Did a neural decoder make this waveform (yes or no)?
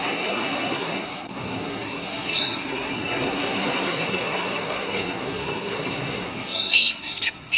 yes